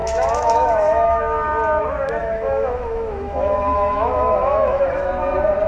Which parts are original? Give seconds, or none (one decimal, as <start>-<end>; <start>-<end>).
1.2-2.2; 5.1-5.7

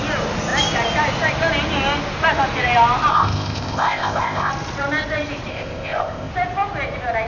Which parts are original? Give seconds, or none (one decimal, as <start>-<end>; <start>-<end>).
0.0-3.1; 4.5-5.5; 6.3-7.3

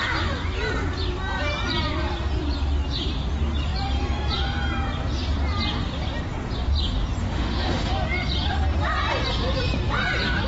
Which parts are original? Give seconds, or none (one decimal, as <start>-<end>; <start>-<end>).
0.0-7.2; 7.9-10.5